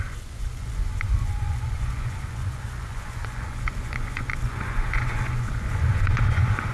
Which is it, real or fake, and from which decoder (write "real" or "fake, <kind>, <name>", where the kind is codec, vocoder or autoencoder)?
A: fake, vocoder, Vocos